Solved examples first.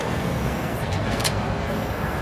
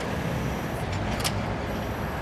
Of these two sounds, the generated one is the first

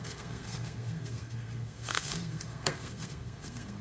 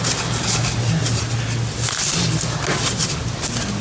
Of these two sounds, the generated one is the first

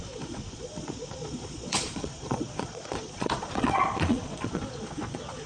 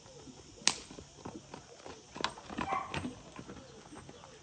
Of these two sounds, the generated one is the first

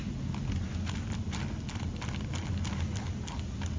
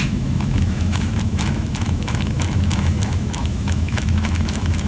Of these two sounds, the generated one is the second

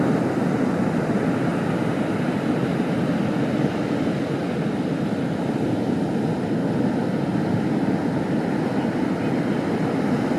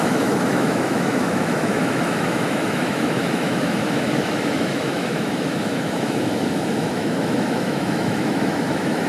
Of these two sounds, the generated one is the second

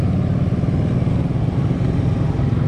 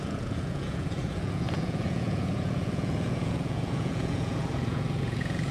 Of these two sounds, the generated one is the second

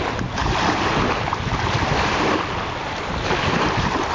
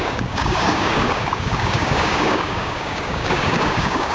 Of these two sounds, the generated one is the second